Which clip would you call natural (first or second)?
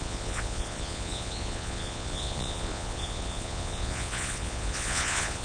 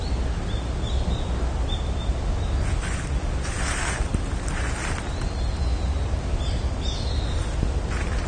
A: second